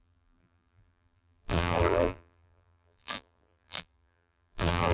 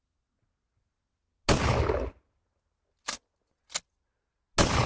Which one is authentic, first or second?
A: second